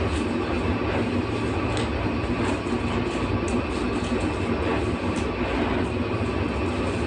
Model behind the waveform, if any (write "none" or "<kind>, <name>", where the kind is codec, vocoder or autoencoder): none